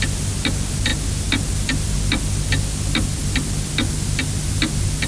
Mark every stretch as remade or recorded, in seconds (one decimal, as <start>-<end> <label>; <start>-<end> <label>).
0.0-5.1 recorded